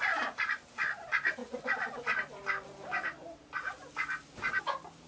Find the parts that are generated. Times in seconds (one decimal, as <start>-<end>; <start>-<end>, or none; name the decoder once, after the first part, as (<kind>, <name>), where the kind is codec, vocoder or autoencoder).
1.4-4.5 (vocoder, BigVGAN v2)